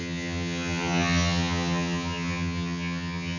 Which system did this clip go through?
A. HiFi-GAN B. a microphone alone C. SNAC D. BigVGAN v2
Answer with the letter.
A